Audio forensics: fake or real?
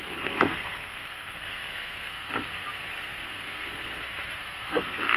fake